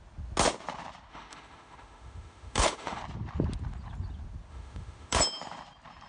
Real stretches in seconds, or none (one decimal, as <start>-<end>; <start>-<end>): 0.0-1.1; 3.0-4.5; 5.2-6.1